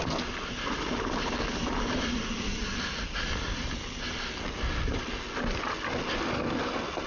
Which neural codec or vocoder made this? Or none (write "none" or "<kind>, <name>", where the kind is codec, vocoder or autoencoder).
none